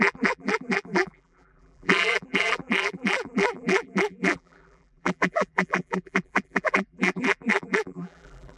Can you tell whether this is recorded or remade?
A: remade